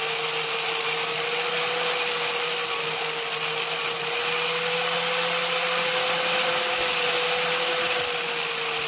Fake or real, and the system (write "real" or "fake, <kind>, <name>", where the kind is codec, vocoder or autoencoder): real